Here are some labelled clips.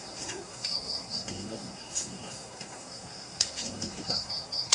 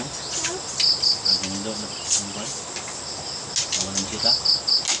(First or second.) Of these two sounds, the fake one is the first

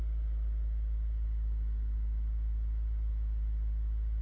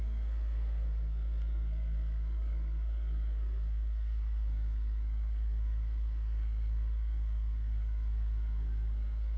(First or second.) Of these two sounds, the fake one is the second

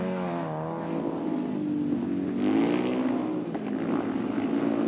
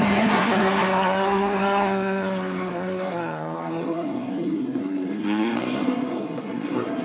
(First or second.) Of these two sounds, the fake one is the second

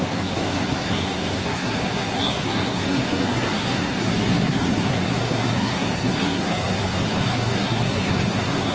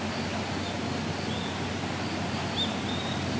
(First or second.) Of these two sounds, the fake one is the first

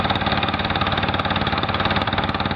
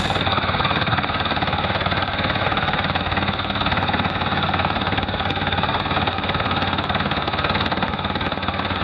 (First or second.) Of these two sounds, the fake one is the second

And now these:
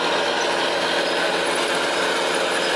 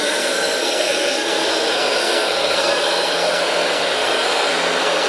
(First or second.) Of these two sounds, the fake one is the second